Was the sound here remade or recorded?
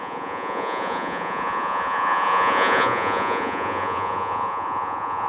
remade